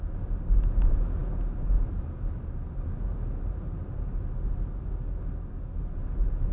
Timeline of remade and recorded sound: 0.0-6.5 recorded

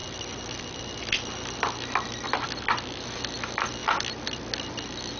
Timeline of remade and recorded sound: 0.0-5.2 recorded

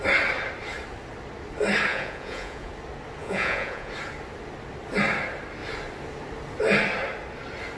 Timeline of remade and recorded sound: 0.0-1.9 recorded; 1.9-2.7 remade; 2.7-3.2 recorded; 3.2-3.9 remade; 3.9-7.8 recorded

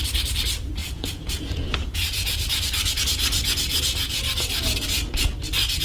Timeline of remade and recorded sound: 0.0-0.8 recorded; 0.8-3.0 remade; 3.0-3.7 recorded; 3.7-4.3 remade; 4.3-5.8 recorded